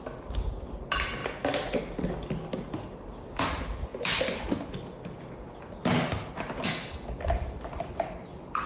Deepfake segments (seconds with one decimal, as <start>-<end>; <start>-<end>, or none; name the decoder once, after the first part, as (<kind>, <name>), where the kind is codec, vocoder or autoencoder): none